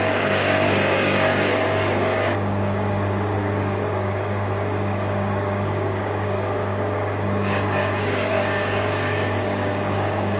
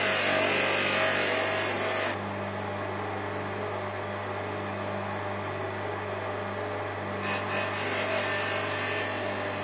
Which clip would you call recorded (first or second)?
second